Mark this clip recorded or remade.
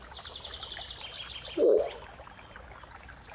recorded